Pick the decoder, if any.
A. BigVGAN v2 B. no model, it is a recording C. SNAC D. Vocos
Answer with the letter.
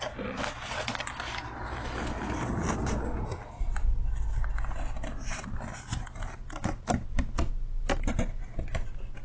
B